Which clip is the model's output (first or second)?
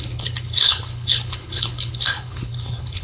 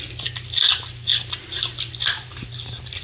first